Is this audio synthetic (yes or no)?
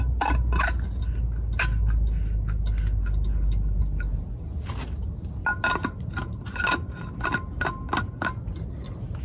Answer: no